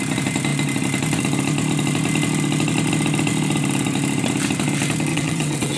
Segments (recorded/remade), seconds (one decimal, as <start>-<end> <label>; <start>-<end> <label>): 0.0-5.1 recorded; 5.1-5.8 remade